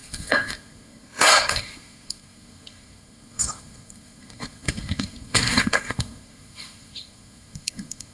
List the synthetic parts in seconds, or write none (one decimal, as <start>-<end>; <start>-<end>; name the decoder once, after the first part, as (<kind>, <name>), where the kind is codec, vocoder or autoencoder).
0.0-8.1 (codec, SNAC)